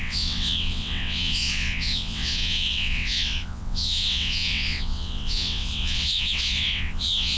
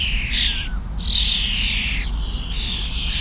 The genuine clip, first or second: second